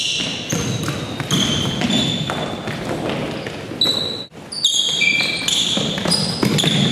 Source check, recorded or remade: recorded